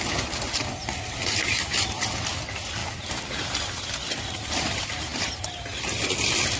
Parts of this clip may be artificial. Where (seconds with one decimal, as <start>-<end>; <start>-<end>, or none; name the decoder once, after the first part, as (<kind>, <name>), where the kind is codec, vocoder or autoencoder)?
none